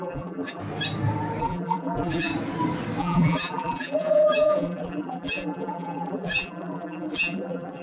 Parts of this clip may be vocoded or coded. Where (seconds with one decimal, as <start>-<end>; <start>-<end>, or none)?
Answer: 0.0-0.6; 1.4-2.3; 3.0-7.8